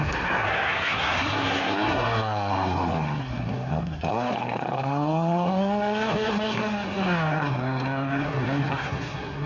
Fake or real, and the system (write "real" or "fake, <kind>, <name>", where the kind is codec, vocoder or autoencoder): fake, codec, SNAC